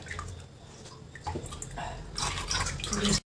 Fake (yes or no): no